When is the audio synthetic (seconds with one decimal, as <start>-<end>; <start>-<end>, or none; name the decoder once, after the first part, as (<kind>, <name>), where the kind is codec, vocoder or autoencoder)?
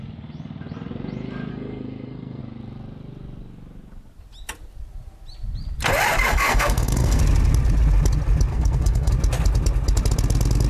1.5-2.4 (codec, SNAC); 6.3-7.2; 8.5-9.1